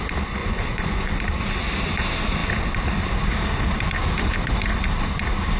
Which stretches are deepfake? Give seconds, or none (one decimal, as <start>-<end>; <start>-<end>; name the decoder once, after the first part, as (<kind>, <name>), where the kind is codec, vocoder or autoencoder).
0.4-1.1 (vocoder, Vocos)

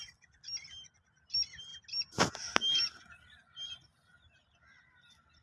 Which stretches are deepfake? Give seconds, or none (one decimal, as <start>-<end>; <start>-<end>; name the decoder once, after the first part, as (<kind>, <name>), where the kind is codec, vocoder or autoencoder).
none

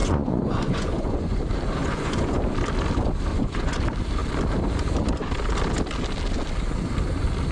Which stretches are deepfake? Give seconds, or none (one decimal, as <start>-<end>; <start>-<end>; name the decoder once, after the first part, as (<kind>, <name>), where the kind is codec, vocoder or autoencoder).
0.0-1.4 (vocoder, Vocos); 1.8-2.4; 3.3-3.8

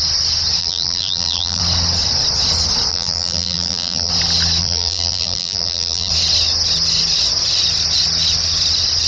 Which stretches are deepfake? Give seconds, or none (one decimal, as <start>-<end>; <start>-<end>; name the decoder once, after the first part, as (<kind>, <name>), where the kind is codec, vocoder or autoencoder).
0.6-1.6 (vocoder, BigVGAN v2); 2.9-4.1; 4.6-6.1

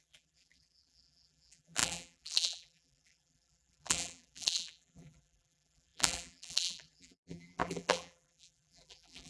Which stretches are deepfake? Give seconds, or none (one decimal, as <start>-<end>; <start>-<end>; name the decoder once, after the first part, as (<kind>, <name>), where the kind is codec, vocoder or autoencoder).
0.0-9.3 (vocoder, BigVGAN v2)